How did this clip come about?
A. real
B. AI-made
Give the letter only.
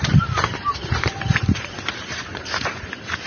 B